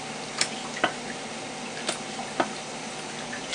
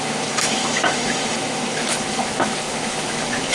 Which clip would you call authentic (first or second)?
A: first